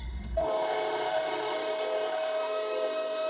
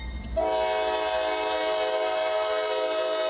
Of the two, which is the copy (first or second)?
first